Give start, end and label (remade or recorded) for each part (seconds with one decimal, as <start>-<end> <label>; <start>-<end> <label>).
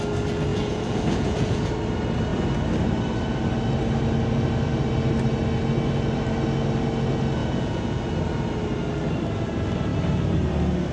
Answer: 0.0-0.5 recorded; 0.5-1.7 remade; 1.7-7.4 recorded; 7.4-8.0 remade; 8.0-10.9 recorded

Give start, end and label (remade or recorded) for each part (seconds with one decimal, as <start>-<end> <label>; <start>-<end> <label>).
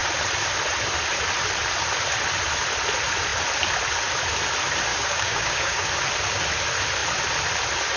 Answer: 0.0-4.9 recorded; 4.9-5.9 remade; 5.9-8.0 recorded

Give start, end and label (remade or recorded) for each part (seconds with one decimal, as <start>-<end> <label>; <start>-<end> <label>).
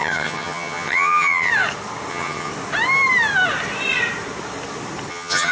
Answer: 0.0-1.5 remade; 1.5-2.1 recorded; 2.1-2.5 remade; 2.5-5.1 recorded; 5.1-5.5 remade